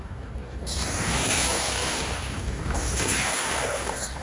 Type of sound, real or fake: fake